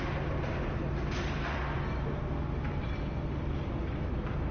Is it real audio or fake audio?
real